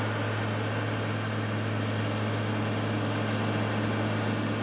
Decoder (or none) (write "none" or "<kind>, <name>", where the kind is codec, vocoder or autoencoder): none